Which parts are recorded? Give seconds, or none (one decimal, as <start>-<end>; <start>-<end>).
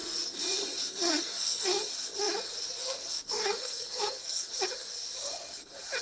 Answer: 0.0-0.8; 1.8-2.8; 4.5-6.0